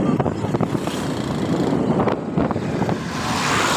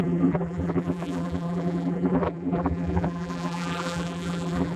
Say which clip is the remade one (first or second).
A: second